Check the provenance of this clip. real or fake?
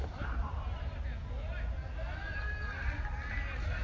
real